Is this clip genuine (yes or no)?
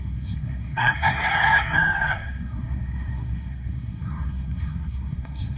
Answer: no